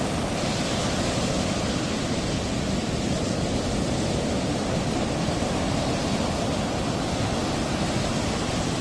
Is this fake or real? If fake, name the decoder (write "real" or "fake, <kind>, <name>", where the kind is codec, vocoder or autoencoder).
real